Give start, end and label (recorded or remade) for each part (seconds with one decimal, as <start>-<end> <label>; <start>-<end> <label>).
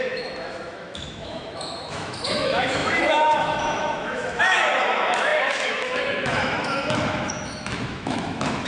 0.0-8.7 remade